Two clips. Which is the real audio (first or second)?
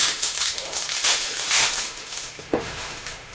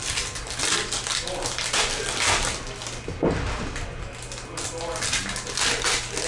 second